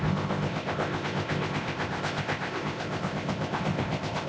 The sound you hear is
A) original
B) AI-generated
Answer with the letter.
B